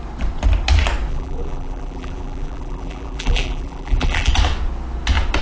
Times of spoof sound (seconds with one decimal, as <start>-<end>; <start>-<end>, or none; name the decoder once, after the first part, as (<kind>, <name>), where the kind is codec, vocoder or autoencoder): 1.1-4.3 (vocoder, BigVGAN v2)